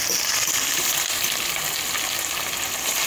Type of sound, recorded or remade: recorded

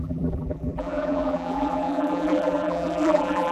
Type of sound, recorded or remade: remade